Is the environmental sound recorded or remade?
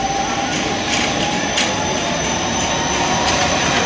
recorded